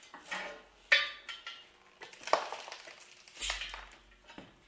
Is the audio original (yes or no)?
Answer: yes